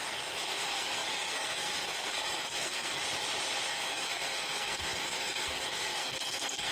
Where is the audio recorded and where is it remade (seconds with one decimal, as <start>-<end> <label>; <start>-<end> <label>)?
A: 0.0-3.0 remade; 3.0-3.7 recorded; 3.7-6.7 remade